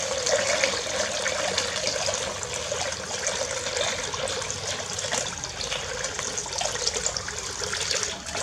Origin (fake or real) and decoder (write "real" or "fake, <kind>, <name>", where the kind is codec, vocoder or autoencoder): real